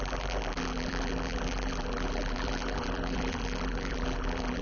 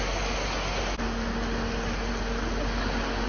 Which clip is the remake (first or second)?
first